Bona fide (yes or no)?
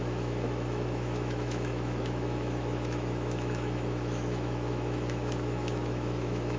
no